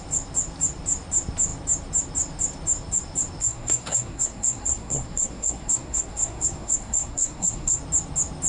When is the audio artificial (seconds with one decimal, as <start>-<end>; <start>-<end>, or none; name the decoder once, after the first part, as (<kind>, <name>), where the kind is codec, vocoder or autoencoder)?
3.4-7.8 (codec, SNAC)